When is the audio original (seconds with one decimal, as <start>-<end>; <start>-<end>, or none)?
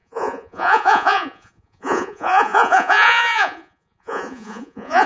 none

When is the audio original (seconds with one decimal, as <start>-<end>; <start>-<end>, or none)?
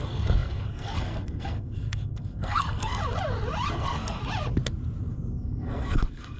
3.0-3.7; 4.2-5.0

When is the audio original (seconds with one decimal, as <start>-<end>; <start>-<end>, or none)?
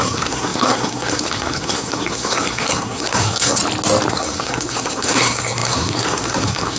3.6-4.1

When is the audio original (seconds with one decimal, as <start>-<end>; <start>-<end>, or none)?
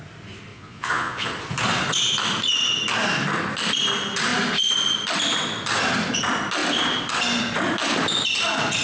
0.0-0.5; 1.3-8.8